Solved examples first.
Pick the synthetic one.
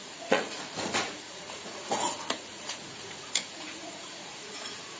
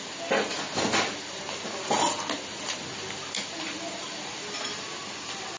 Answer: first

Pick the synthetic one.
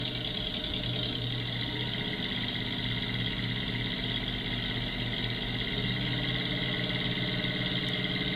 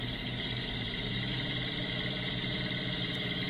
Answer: second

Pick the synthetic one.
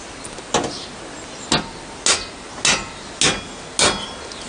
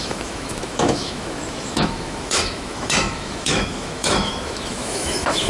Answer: second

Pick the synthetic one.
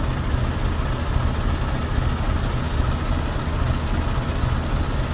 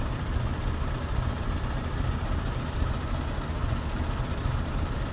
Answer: second